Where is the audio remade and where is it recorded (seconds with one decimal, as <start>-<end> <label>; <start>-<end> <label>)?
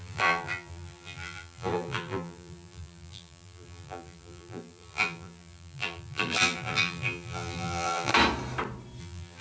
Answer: 0.0-8.1 remade; 8.1-9.0 recorded; 9.0-9.4 remade